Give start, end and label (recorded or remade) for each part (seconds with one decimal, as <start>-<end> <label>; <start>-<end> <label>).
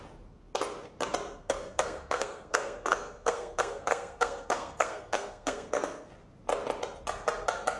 0.0-1.4 recorded; 1.4-6.1 remade; 6.1-7.8 recorded